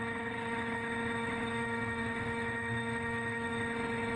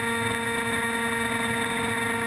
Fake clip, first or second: first